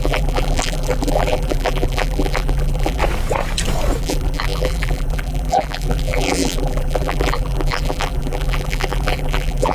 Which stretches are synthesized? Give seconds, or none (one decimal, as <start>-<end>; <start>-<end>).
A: 0.0-3.0; 4.0-9.7